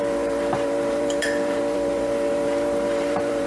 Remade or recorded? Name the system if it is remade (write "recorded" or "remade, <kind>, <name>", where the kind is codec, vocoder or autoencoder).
remade, vocoder, BigVGAN v2